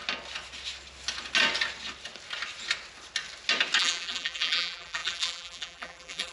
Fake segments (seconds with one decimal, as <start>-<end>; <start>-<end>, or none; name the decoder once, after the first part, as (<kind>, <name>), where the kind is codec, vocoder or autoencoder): 3.8-6.3 (vocoder, BigVGAN v2)